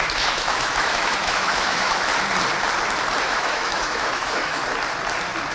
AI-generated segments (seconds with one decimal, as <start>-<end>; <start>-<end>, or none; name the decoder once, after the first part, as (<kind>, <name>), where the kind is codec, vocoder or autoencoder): 0.0-2.1 (autoencoder, DAC-VAE); 3.2-4.6